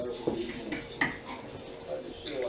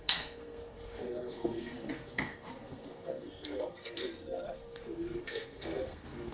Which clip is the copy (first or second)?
second